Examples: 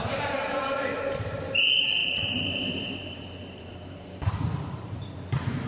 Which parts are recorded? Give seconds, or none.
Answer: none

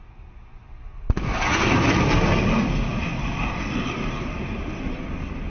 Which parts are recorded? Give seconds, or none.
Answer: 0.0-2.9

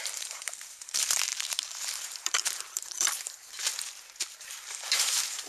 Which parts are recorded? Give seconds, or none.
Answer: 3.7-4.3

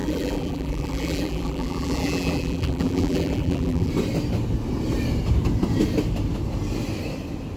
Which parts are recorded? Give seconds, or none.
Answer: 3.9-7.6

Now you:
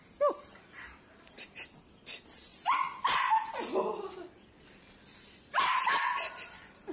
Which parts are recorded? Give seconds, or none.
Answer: 2.5-5.5